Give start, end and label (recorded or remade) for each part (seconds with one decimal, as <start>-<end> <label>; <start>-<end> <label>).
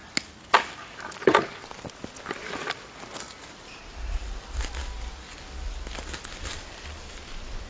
0.0-7.7 recorded